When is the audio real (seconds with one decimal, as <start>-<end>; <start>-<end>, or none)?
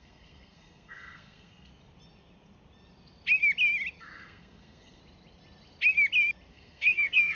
1.7-4.0; 5.0-6.5